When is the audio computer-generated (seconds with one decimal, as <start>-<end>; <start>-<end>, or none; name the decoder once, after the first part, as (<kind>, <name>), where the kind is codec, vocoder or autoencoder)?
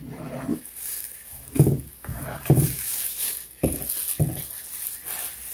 0.5-3.8 (codec, DAC)